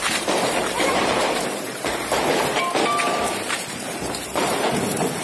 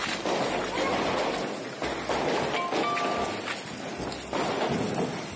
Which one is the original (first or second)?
second